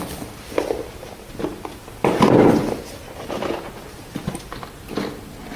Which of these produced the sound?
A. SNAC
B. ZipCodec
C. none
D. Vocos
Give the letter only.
C